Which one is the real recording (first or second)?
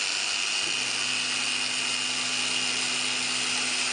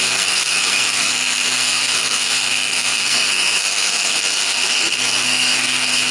first